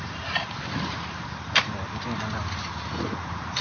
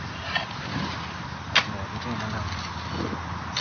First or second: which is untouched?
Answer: second